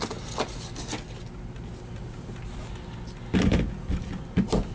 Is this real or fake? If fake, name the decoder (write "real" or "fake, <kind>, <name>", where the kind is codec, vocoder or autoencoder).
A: real